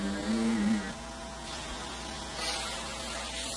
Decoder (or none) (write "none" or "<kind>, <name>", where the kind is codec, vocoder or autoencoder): none